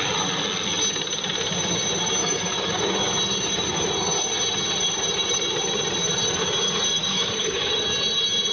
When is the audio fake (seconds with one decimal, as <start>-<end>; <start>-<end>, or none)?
2.2-2.8; 7.0-7.6